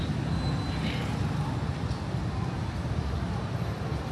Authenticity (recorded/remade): recorded